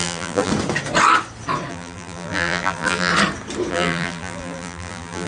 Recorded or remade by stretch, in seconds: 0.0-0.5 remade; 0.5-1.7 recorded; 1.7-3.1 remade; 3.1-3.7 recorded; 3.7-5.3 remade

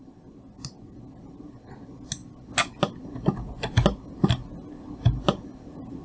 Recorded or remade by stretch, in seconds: 0.0-6.0 recorded

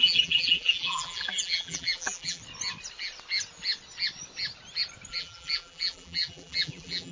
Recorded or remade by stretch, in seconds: 0.0-2.4 remade; 2.4-5.1 recorded; 5.1-7.1 remade

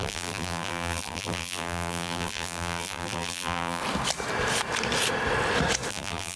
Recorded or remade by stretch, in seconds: 0.0-3.8 remade; 3.8-5.9 recorded; 5.9-6.4 remade

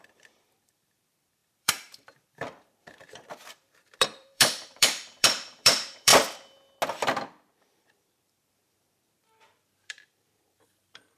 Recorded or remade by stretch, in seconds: 0.0-6.1 remade; 6.1-7.6 recorded; 7.6-11.2 remade

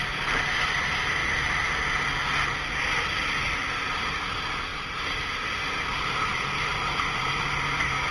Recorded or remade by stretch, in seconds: 0.0-1.2 remade; 1.2-3.7 recorded; 3.7-8.1 remade

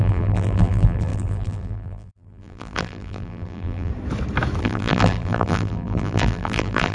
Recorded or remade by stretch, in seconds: 0.0-3.9 remade; 3.9-4.6 recorded; 4.6-6.9 remade

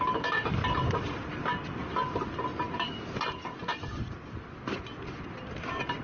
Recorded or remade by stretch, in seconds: 0.0-3.7 recorded; 3.7-4.5 remade; 4.5-6.0 recorded